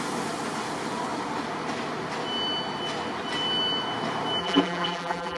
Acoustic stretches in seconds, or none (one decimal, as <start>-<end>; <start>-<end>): 0.0-4.4